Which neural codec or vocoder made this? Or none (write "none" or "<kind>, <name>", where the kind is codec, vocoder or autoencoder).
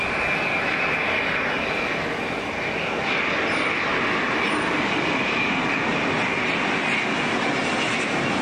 none